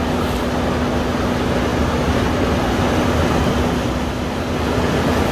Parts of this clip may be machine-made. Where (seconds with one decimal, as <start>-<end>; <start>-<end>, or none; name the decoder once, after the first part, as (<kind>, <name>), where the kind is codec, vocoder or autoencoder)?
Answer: none